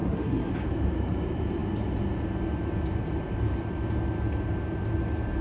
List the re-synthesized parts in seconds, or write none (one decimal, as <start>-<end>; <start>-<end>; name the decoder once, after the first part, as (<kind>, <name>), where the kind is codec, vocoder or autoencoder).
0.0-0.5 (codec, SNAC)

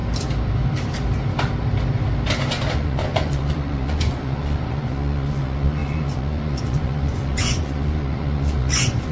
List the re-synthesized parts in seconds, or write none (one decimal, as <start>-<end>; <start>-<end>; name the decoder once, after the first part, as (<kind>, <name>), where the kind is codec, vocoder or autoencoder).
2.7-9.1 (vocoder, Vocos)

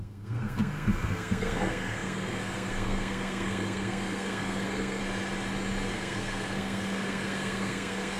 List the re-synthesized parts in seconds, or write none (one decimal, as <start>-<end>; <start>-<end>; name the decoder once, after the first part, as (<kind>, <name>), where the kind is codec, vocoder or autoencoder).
0.0-5.0 (codec, SNAC); 5.9-8.2

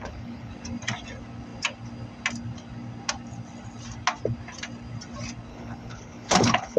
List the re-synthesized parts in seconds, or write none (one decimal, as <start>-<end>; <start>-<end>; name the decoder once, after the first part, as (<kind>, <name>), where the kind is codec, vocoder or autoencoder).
0.0-0.5 (codec, HILCodec); 5.5-6.8

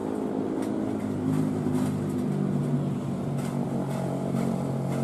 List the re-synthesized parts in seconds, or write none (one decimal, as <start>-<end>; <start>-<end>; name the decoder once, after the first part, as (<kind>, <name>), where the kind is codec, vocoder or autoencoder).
none